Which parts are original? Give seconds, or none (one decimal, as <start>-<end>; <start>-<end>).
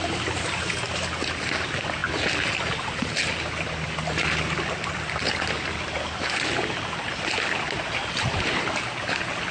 0.0-9.5